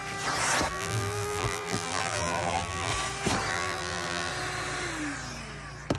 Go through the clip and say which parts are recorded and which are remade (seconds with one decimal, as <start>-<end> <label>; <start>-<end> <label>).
0.0-0.7 recorded; 0.7-2.9 remade; 2.9-3.5 recorded; 3.5-4.3 remade; 4.3-6.0 recorded